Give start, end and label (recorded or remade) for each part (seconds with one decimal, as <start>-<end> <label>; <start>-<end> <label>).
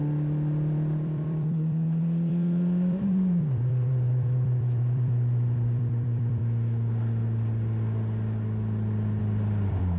0.0-6.4 remade; 6.4-9.2 recorded; 9.2-10.0 remade